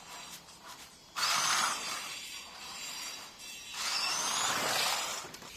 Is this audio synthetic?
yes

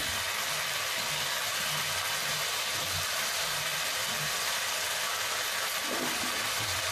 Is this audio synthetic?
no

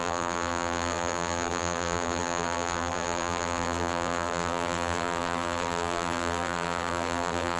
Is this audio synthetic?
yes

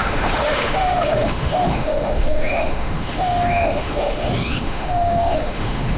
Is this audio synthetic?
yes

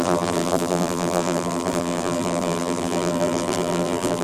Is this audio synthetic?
yes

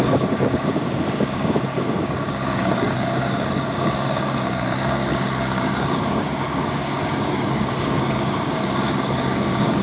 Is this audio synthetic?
yes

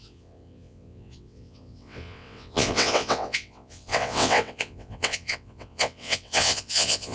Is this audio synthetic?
yes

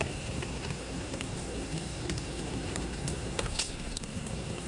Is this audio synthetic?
yes